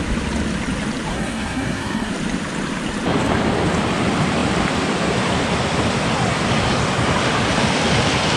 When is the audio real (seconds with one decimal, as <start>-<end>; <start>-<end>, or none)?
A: 0.0-1.1; 2.1-8.4